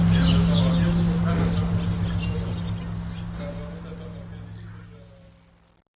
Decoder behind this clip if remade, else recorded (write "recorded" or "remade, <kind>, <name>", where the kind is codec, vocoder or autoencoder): recorded